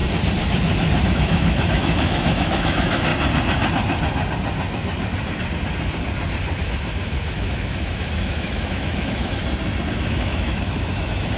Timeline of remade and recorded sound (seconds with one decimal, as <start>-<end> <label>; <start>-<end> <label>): 0.0-1.1 recorded; 1.1-3.1 remade; 3.1-6.6 recorded; 6.6-9.4 remade; 9.4-9.9 recorded; 9.9-11.4 remade

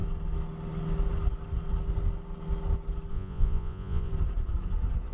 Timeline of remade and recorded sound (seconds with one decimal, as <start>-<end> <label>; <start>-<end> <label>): 0.0-3.1 recorded; 3.1-4.1 remade; 4.1-5.1 recorded